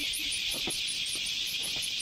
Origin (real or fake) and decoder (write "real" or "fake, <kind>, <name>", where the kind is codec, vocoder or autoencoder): real